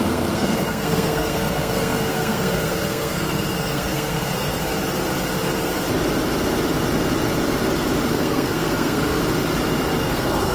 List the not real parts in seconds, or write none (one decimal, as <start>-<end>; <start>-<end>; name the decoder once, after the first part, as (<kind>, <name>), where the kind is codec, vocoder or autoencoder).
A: 0.0-4.6 (codec, SNAC); 8.1-9.2; 10.0-10.5